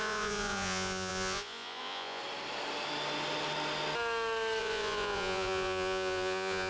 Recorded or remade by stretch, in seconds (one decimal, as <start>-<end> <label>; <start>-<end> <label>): 0.0-2.2 remade; 2.2-4.6 recorded; 4.6-6.7 remade